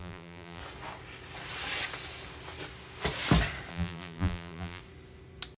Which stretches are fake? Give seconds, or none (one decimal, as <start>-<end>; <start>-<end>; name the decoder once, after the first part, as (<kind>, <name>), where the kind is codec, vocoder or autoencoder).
0.0-0.6 (vocoder, BigVGAN v2); 3.7-4.8